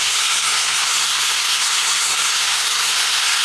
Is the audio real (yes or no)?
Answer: no